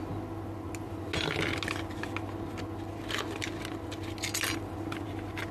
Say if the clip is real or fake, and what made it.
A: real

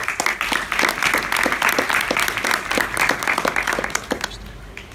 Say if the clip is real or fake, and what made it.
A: real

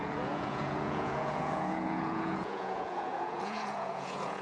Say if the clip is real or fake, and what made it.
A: fake, vocoder, Vocos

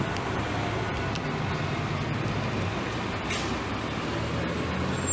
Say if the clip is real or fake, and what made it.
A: real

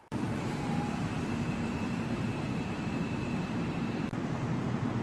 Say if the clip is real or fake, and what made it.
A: fake, vocoder, BigVGAN v2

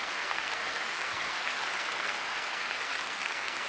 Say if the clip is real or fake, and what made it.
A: fake, codec, SNAC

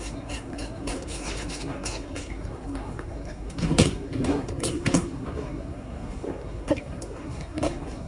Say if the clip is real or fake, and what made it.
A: fake, codec, SNAC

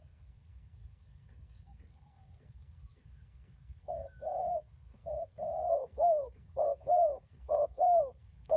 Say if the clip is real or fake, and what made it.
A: fake, codec, SNAC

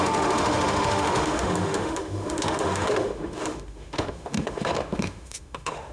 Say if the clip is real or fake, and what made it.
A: fake, autoencoder, DAC-VAE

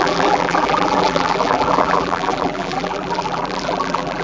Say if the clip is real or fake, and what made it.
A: fake, vocoder, BigVGAN v2